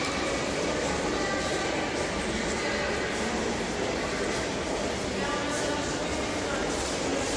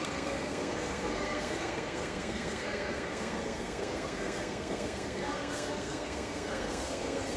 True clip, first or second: first